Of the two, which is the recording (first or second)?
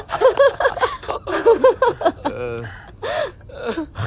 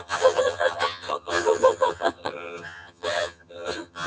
first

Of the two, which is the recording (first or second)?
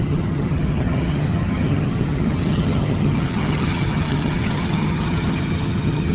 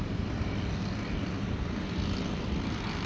second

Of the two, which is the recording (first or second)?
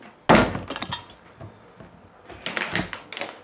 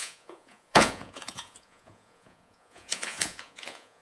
first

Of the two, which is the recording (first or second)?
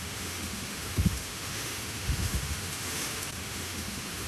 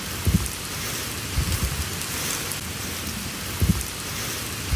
second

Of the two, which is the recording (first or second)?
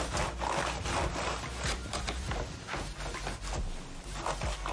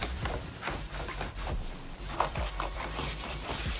first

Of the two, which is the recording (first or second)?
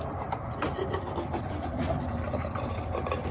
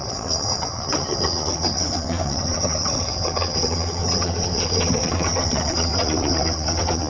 first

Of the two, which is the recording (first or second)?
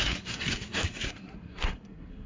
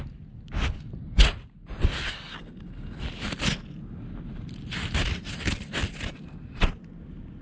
second